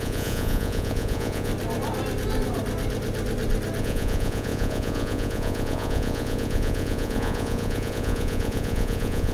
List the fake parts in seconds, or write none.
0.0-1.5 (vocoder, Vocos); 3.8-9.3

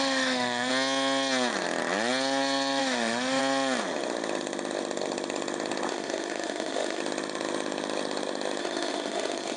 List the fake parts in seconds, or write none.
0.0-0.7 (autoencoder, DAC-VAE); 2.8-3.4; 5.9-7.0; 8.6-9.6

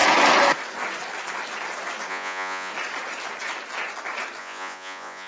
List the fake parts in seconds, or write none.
2.1-2.7 (vocoder, Vocos); 4.4-5.3